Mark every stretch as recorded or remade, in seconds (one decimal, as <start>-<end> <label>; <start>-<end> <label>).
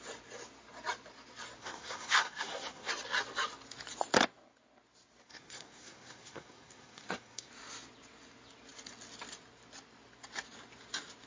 0.0-1.6 recorded; 1.6-2.9 remade; 2.9-5.2 recorded; 5.2-7.5 remade; 7.5-11.3 recorded